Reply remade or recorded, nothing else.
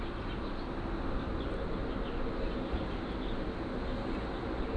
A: recorded